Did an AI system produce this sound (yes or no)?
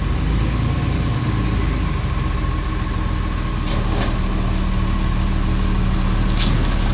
no